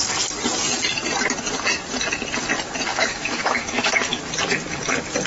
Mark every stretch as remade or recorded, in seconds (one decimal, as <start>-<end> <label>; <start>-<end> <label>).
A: 0.0-2.9 recorded; 2.9-4.2 remade; 4.2-5.3 recorded